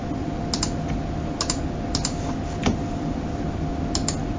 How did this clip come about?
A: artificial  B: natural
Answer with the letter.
B